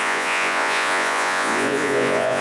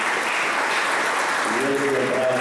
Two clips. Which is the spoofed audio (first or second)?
first